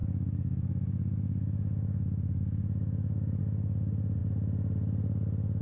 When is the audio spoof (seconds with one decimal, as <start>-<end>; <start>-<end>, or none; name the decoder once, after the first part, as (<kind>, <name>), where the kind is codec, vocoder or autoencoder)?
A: 0.0-3.4 (autoencoder, DAC-VAE)